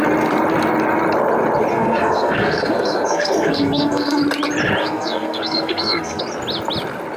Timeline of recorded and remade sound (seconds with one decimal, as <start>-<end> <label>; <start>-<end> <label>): 0.0-1.7 recorded; 1.7-4.2 remade; 4.2-4.8 recorded; 4.8-6.2 remade; 6.2-7.2 recorded